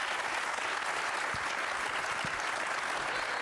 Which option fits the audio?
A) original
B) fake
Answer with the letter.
A